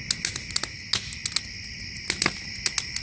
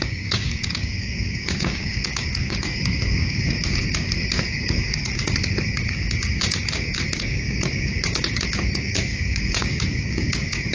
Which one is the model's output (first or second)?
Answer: second